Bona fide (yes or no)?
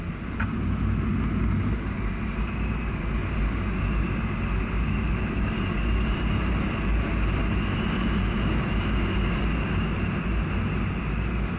yes